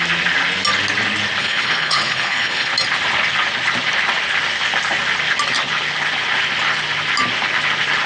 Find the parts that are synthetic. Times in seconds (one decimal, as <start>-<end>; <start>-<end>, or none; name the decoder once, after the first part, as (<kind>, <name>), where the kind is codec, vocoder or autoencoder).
1.4-2.7 (codec, HILCodec)